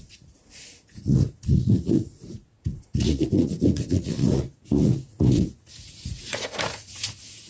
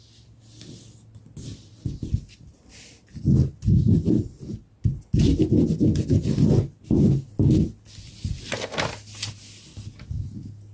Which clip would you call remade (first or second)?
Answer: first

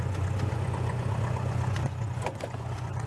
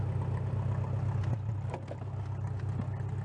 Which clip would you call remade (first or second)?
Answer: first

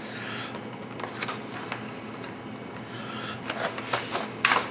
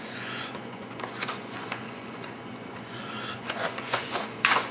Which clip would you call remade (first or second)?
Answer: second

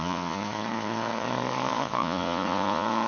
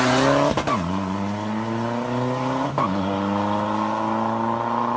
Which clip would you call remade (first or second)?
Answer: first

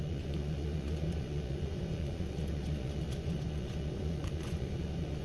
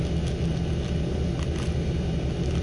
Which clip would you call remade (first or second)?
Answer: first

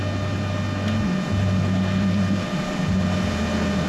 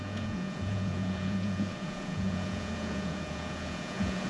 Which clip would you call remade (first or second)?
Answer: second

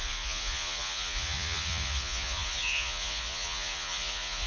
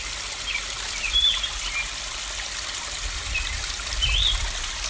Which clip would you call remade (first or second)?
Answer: first